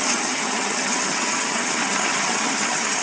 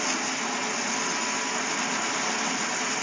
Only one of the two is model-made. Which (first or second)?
first